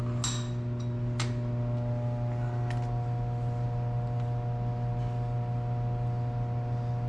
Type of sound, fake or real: real